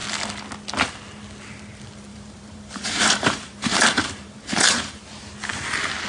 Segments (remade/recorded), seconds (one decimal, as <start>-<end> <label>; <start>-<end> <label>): 0.0-2.1 recorded; 2.1-5.0 remade; 5.0-6.1 recorded